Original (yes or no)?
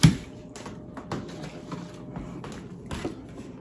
yes